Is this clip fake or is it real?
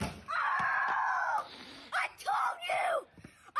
real